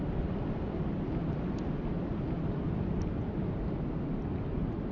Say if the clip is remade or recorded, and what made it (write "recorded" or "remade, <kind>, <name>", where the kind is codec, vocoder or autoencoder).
recorded